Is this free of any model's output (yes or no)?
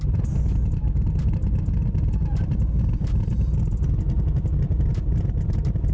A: yes